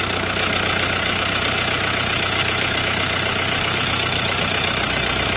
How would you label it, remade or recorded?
remade